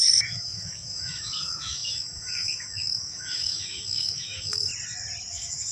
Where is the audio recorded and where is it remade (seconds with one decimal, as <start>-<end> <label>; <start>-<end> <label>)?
0.0-4.7 remade; 4.7-5.3 recorded; 5.3-5.7 remade